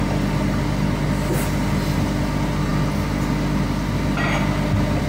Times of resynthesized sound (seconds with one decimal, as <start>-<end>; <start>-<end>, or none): none